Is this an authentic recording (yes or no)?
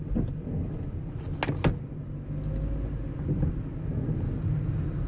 yes